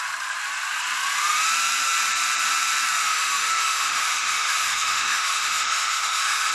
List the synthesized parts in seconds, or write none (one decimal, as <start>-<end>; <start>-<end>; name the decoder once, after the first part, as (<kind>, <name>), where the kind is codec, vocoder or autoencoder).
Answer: 3.0-6.5 (autoencoder, DAC-VAE)